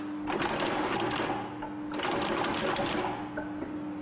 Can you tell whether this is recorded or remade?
recorded